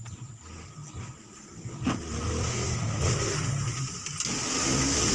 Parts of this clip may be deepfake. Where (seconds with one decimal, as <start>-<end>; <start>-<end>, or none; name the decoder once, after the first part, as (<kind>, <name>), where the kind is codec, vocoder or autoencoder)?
none